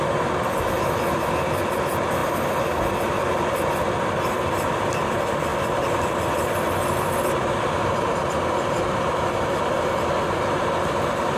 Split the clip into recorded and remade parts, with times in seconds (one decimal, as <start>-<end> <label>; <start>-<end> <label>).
0.0-5.5 recorded; 5.5-6.2 remade; 6.2-11.4 recorded